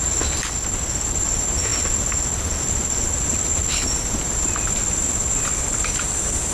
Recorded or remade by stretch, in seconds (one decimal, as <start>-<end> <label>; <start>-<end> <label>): 0.0-6.5 recorded